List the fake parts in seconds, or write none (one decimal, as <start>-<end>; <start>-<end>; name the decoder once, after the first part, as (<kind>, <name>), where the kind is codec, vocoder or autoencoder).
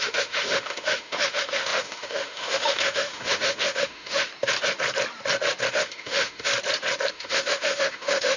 0.0-4.3 (autoencoder, DAC-VAE); 5.7-6.5; 7.1-8.4